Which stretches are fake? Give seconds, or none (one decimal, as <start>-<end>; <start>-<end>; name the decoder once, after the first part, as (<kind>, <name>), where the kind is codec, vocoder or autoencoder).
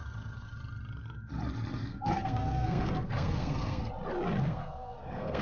1.8-3.9 (codec, SNAC); 4.4-5.4